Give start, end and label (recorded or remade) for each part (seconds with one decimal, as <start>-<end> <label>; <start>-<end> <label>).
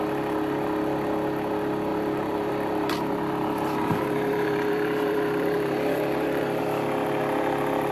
0.0-1.9 recorded; 1.9-6.6 remade; 6.6-7.9 recorded